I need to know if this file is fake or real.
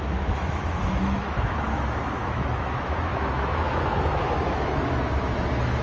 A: fake